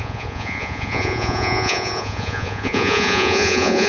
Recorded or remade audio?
remade